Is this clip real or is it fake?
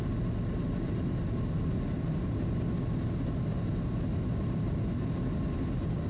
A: real